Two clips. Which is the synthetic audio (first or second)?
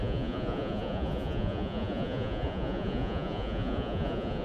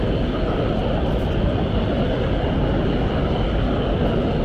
first